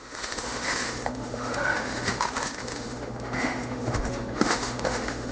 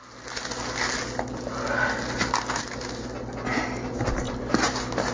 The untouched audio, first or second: second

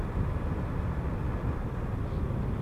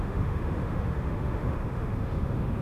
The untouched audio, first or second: first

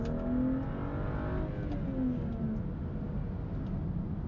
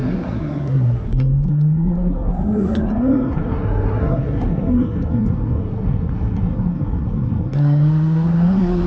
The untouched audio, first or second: first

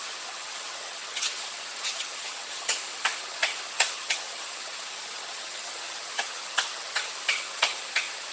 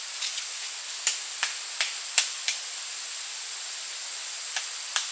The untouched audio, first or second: second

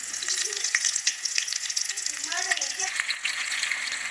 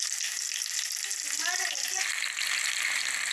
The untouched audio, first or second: second